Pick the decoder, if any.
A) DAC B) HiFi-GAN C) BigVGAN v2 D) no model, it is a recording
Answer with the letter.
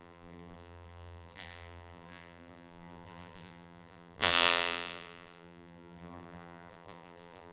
C